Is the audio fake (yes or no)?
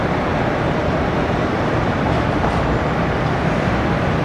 no